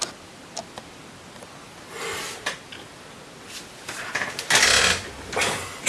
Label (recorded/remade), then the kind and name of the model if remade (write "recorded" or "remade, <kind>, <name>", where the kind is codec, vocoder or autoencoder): recorded